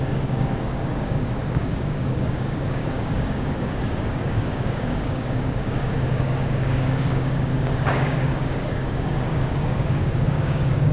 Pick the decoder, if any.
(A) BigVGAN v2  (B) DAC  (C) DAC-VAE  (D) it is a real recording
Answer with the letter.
B